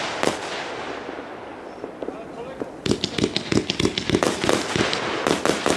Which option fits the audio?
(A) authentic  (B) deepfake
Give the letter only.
A